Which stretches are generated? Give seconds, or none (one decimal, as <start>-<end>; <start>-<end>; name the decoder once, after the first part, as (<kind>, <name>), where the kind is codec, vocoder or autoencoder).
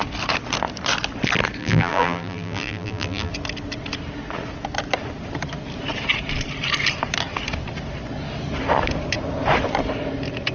1.6-3.3 (vocoder, BigVGAN v2)